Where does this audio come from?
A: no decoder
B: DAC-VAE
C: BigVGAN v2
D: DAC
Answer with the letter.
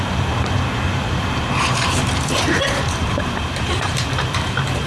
C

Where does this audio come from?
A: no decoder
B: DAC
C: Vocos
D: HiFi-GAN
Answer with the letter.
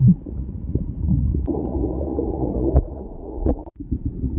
C